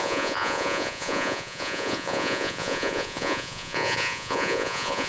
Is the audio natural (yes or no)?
no